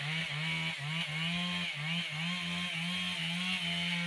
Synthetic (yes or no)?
no